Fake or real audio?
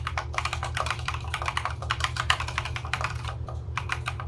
fake